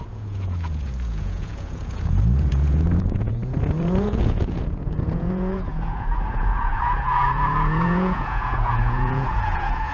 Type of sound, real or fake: fake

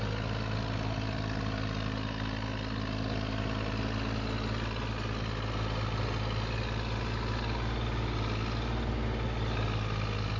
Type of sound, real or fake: real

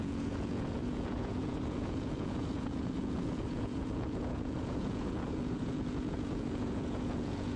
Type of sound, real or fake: fake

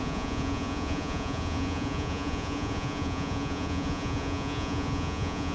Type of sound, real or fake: fake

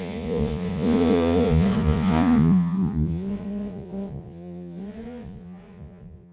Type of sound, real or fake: fake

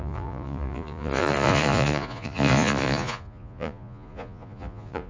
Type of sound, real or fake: fake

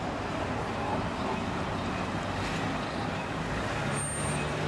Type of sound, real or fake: real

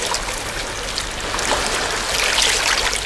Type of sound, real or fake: real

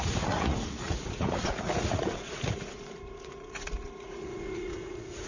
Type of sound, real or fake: fake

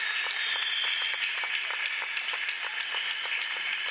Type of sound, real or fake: real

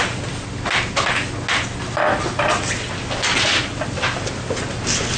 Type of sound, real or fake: real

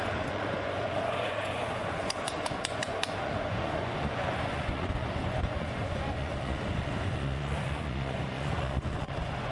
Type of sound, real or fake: fake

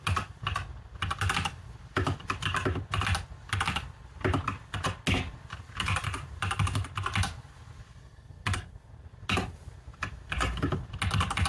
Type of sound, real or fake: real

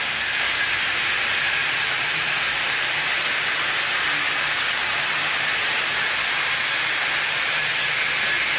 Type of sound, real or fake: real